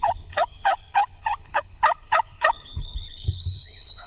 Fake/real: fake